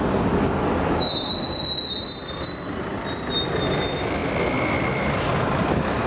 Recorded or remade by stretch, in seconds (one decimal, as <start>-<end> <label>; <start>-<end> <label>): 0.0-6.1 recorded